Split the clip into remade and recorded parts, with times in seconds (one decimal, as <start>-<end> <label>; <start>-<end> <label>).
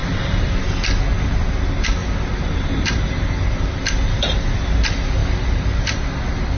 0.0-0.7 remade; 0.7-2.0 recorded; 2.0-4.4 remade; 4.4-5.2 recorded; 5.2-6.0 remade; 6.0-6.6 recorded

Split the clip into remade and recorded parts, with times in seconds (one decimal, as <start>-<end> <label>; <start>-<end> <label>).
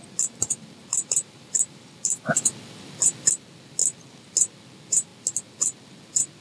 0.0-0.9 recorded; 0.9-1.9 remade; 1.9-6.4 recorded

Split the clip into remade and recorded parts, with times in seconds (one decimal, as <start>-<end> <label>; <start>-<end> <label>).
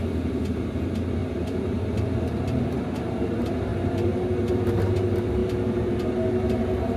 0.0-7.0 remade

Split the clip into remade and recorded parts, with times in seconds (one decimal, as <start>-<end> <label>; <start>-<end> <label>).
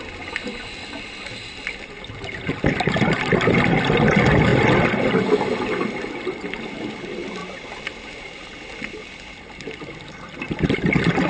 0.0-7.4 recorded; 7.4-8.6 remade; 8.6-11.3 recorded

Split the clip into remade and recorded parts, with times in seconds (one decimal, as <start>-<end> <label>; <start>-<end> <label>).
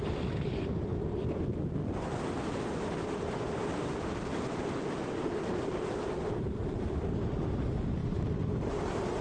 0.0-9.2 recorded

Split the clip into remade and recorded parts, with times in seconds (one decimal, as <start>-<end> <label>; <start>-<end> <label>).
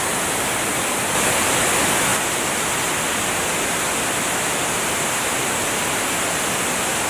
0.0-7.1 recorded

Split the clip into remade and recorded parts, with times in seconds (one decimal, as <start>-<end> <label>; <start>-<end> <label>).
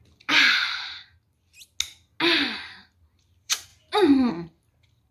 0.0-1.1 remade; 1.1-3.2 recorded; 3.2-5.1 remade